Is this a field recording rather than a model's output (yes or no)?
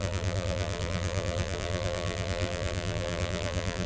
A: no